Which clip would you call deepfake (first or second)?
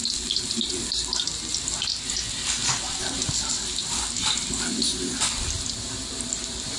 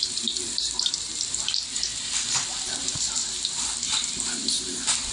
second